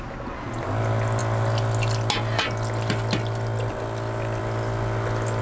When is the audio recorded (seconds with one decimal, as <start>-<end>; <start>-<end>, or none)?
0.0-5.4